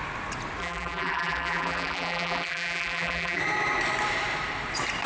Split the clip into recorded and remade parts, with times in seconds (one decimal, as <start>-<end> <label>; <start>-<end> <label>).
0.0-0.6 recorded; 0.6-3.4 remade; 3.4-5.1 recorded